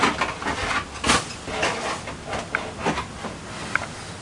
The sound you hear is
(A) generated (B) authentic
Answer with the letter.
B